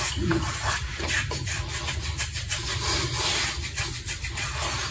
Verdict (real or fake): real